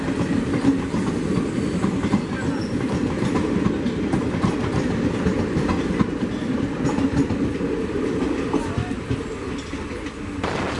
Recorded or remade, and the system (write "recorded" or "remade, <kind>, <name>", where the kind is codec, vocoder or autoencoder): recorded